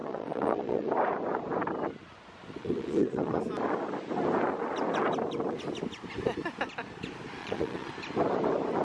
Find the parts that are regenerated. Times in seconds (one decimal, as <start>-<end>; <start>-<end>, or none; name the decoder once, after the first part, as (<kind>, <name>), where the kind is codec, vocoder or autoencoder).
0.0-0.9 (vocoder, Vocos); 2.6-3.4; 7.4-7.9